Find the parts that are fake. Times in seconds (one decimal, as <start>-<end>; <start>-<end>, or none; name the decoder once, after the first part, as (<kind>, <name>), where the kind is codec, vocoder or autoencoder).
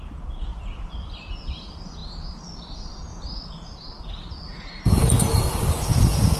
none